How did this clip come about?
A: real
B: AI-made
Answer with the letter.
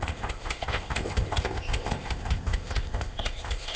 B